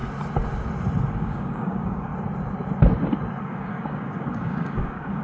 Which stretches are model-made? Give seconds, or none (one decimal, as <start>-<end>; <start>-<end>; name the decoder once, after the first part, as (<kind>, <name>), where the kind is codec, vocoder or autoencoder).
1.2-2.1 (codec, DAC); 3.4-5.2